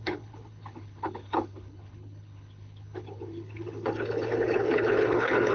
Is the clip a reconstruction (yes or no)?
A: yes